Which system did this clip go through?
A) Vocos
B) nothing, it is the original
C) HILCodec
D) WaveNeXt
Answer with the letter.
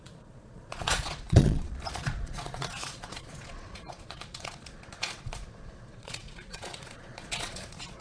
A